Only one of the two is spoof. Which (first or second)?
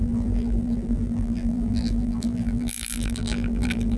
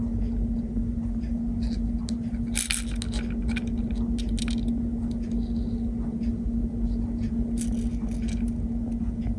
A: first